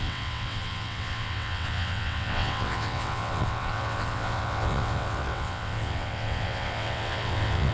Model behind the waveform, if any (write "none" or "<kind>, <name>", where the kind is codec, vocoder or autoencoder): vocoder, WaveNeXt